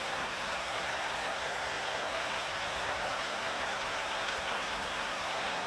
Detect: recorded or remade remade